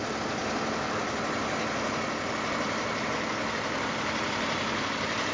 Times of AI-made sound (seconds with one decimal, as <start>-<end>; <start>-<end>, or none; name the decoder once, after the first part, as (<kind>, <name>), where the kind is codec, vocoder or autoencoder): none